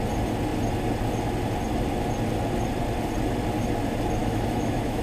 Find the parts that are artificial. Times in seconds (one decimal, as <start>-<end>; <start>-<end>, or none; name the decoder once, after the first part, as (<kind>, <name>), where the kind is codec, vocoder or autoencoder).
4.2-5.0 (autoencoder, DAC-VAE)